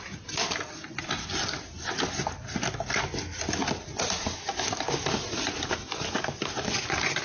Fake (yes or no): no